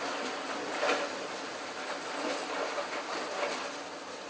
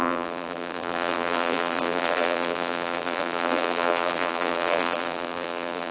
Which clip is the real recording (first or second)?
first